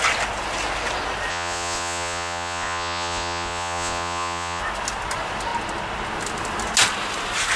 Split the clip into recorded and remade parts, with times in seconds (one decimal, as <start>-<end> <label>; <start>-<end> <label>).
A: 0.0-1.3 recorded; 1.3-4.6 remade; 4.6-7.6 recorded